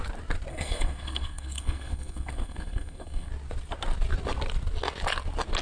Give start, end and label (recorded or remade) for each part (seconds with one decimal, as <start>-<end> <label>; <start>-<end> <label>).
0.0-0.5 recorded; 0.5-3.3 remade; 3.3-5.6 recorded